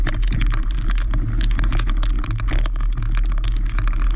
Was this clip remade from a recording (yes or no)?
no